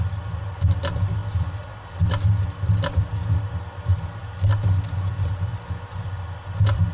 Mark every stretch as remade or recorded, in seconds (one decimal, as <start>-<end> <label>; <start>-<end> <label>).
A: 0.0-6.9 recorded